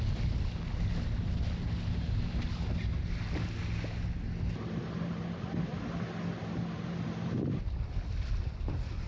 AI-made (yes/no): no